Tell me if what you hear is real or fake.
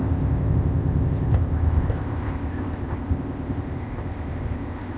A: fake